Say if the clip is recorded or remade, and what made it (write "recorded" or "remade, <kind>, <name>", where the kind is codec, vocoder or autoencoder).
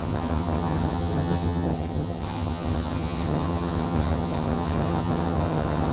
remade, vocoder, HiFi-GAN